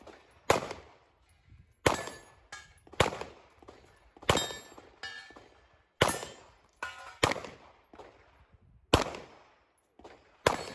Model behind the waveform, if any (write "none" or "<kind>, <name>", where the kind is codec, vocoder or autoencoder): none